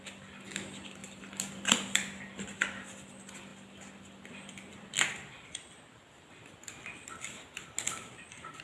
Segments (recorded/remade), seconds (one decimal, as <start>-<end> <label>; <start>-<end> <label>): 0.0-1.0 recorded; 1.0-1.7 remade; 1.7-3.5 recorded; 3.5-4.7 remade; 4.7-8.6 recorded